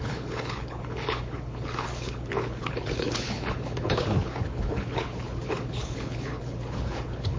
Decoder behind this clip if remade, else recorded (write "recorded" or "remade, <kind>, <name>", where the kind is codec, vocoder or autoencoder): remade, codec, HILCodec